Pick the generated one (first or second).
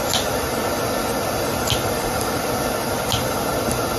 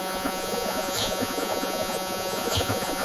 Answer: second